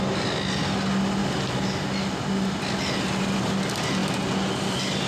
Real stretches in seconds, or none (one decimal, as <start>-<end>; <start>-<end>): 0.0-5.1